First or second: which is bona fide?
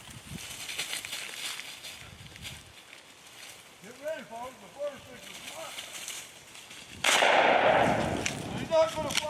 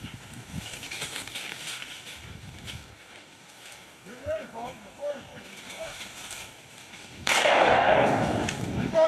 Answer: first